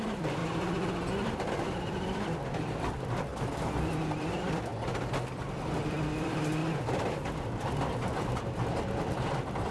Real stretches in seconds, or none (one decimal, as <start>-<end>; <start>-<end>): 0.4-1.5; 3.3-4.2; 4.7-5.4